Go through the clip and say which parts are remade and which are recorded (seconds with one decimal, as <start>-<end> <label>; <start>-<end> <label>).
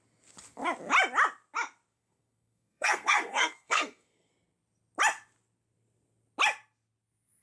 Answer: 0.0-1.9 recorded; 1.9-4.3 remade; 4.3-7.4 recorded